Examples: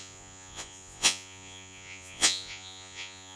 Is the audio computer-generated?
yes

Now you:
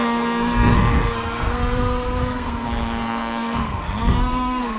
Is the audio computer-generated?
yes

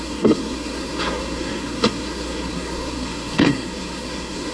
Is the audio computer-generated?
yes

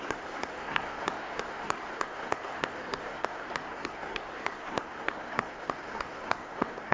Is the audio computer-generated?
yes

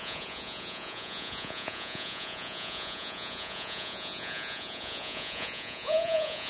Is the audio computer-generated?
yes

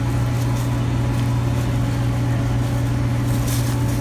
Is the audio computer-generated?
no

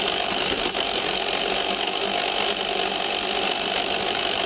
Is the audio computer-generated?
no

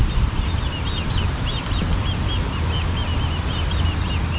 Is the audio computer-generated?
no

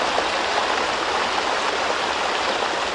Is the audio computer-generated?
no